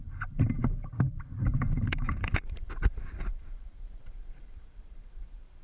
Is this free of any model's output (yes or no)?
no